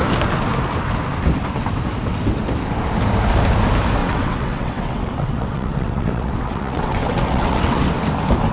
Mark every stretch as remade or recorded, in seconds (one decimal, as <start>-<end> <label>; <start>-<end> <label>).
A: 0.0-4.0 recorded; 4.0-7.8 remade; 7.8-8.5 recorded

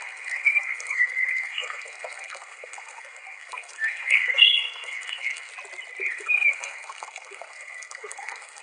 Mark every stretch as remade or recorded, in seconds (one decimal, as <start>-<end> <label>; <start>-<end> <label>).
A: 0.0-5.5 remade; 5.5-6.1 recorded; 6.1-8.6 remade

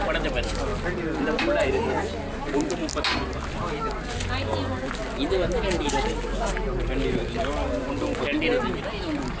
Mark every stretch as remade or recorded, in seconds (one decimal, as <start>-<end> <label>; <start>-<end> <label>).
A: 0.0-9.4 recorded

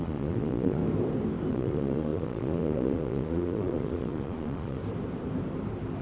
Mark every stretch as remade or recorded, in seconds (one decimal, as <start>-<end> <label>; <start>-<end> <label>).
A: 0.0-0.8 remade; 0.8-1.5 recorded; 1.5-4.8 remade; 4.8-6.0 recorded

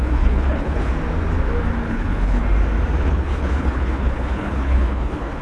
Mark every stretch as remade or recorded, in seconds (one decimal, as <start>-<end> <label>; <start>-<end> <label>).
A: 0.0-0.9 remade; 0.9-1.9 recorded; 1.9-2.4 remade; 2.4-3.0 recorded; 3.0-5.4 remade